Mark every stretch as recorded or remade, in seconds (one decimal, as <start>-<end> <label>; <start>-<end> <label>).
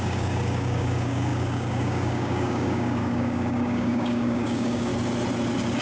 0.0-4.9 remade; 4.9-5.8 recorded